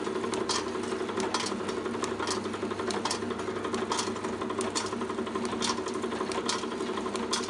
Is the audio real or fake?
real